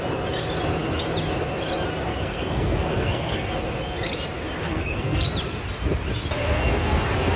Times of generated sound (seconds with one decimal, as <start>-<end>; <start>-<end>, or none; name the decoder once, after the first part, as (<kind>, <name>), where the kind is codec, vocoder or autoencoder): 2.1-3.5 (codec, SNAC); 4.6-5.3